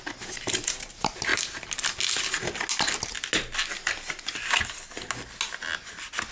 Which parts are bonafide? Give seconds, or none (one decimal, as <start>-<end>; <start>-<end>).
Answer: 0.0-6.3